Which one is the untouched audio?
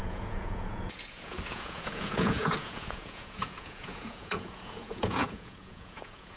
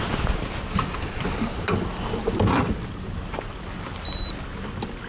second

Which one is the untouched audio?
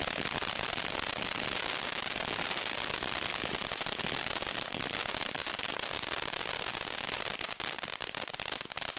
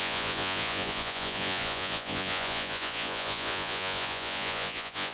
first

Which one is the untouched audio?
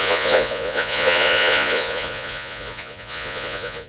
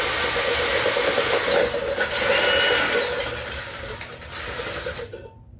second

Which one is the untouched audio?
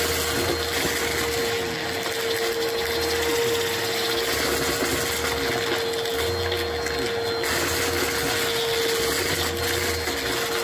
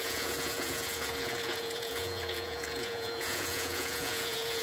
first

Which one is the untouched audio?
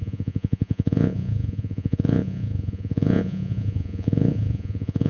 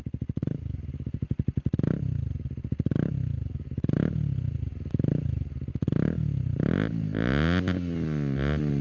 second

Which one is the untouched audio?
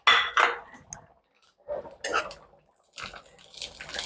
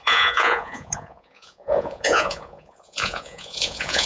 first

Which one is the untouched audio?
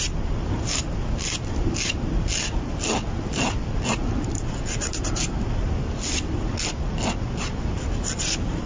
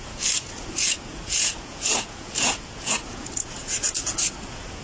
first